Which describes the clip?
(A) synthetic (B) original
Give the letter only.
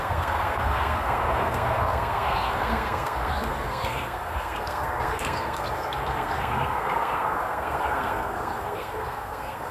A